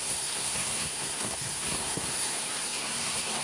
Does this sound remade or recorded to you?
remade